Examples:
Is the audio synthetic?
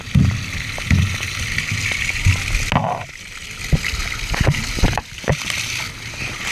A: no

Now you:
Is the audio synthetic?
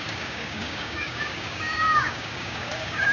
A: yes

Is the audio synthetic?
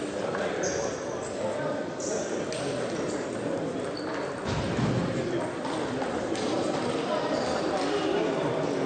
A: no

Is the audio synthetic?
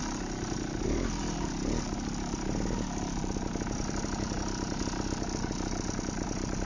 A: no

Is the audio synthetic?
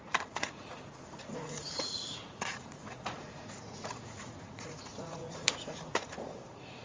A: yes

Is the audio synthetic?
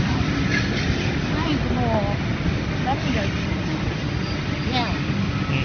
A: no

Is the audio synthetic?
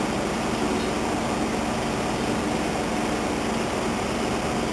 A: no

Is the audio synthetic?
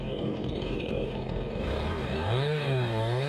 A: yes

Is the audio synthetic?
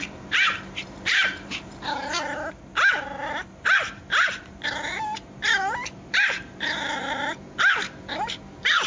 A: yes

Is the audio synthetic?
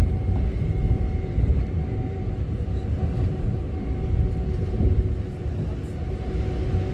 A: no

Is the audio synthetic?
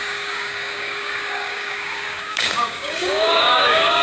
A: yes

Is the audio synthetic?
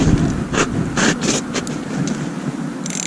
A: no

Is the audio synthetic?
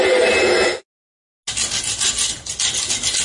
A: no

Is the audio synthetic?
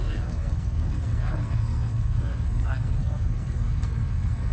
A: yes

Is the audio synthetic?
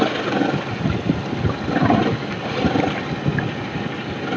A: no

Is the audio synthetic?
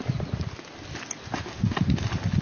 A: no